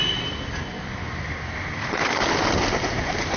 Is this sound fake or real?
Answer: real